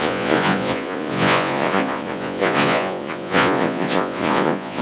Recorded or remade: remade